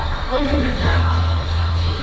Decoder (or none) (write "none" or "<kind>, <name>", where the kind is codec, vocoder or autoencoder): codec, SNAC